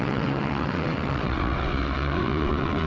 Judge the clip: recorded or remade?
remade